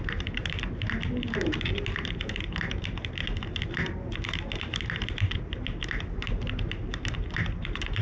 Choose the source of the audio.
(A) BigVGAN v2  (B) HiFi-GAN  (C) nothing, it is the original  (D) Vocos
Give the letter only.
C